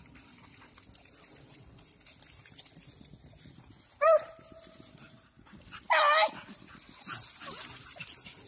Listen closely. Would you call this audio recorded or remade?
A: recorded